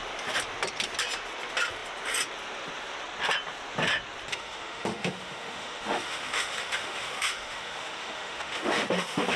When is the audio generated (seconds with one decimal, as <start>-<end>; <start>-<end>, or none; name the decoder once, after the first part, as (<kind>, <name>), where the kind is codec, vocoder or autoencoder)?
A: 4.3-9.4 (autoencoder, DAC-VAE)

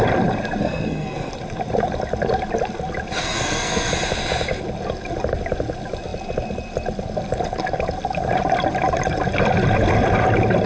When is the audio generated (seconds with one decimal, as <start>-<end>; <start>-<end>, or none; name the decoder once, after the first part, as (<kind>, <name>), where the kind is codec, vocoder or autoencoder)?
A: 0.6-1.3 (codec, SNAC); 3.2-3.9

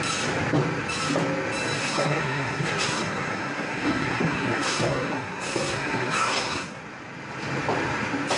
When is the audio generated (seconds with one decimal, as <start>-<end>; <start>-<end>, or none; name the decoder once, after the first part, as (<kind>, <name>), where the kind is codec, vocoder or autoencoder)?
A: 1.8-6.8 (codec, SNAC)

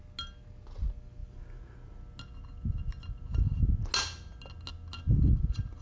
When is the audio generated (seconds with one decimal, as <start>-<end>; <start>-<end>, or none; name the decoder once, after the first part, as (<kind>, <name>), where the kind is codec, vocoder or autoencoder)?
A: none

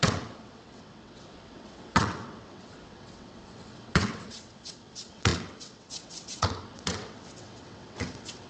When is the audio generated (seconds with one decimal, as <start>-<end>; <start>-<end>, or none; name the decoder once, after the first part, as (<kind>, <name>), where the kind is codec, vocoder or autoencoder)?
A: 0.0-8.5 (vocoder, WaveNeXt)

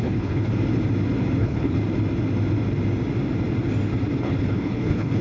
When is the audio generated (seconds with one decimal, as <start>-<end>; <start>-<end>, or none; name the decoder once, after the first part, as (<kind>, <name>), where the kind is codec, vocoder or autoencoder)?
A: 0.0-0.5 (codec, HILCodec); 1.4-1.8; 4.2-5.2

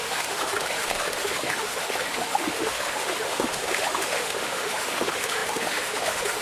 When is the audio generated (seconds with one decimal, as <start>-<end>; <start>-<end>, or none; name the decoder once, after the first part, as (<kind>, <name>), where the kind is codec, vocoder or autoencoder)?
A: 0.0-6.4 (autoencoder, DAC-VAE)